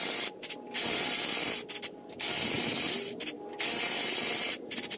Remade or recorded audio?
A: remade